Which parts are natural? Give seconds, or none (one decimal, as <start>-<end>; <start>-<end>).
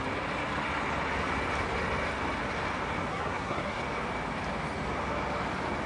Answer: 0.0-3.1; 3.8-5.9